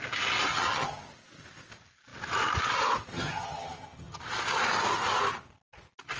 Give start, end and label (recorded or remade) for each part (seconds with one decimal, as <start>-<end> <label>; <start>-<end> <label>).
0.0-0.5 recorded; 0.5-1.0 remade; 1.0-3.1 recorded; 3.1-4.2 remade; 4.2-6.2 recorded